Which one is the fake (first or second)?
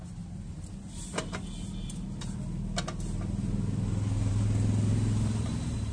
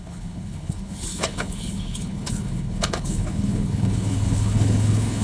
second